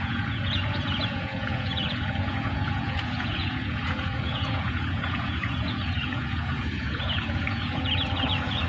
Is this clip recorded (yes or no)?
no